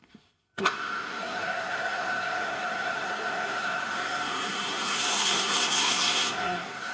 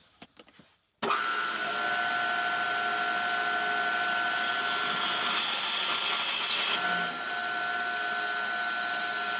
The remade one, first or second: first